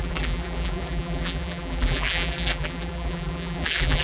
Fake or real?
fake